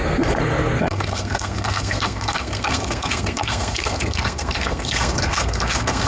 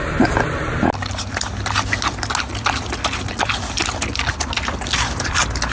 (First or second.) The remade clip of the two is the first